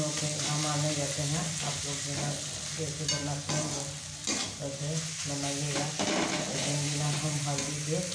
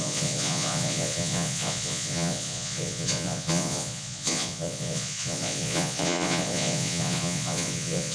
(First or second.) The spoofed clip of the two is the second